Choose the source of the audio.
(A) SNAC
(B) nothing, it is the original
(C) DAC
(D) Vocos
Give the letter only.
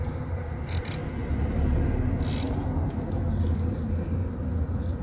B